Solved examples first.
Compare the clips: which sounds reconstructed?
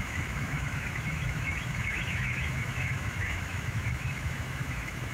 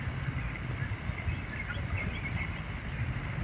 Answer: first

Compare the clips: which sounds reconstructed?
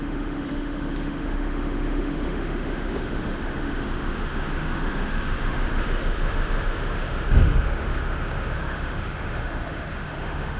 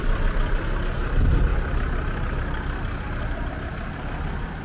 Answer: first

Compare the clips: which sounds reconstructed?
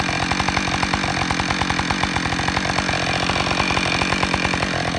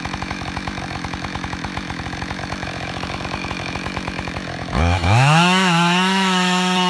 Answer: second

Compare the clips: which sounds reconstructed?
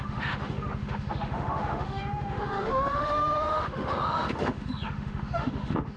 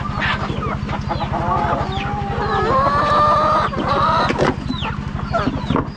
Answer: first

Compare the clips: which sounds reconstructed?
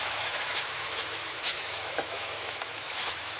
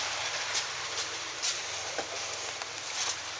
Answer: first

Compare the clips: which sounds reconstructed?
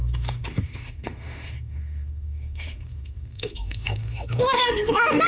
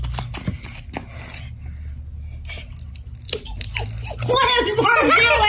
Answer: first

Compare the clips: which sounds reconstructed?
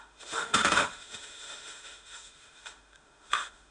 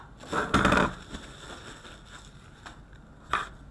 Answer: first